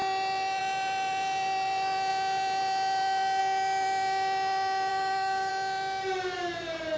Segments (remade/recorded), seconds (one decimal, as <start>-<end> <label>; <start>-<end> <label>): 0.0-4.9 recorded; 4.9-5.5 remade; 5.5-7.0 recorded